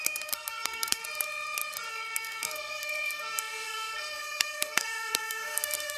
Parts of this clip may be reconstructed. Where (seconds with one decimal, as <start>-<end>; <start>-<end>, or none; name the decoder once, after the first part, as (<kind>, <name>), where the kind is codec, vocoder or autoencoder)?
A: 0.0-1.0 (codec, SNAC); 1.9-6.0